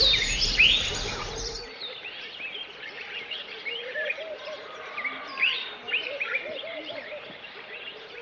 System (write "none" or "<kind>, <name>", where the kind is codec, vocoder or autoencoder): vocoder, BigVGAN v2